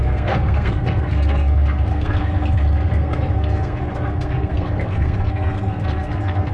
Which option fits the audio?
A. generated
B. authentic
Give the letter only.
A